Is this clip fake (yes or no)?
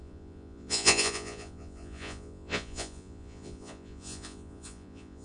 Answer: yes